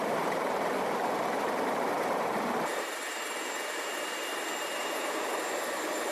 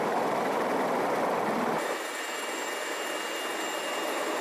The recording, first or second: second